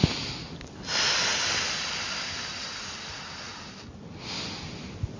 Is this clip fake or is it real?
real